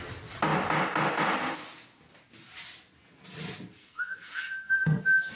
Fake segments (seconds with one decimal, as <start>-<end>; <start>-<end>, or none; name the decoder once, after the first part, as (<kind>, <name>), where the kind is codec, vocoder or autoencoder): 3.8-5.0 (codec, SNAC)